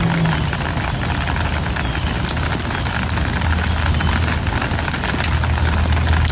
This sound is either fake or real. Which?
real